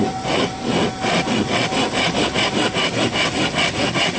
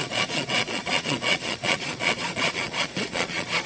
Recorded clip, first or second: first